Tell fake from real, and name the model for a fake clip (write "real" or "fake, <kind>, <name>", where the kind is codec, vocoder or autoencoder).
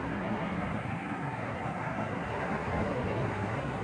fake, codec, SNAC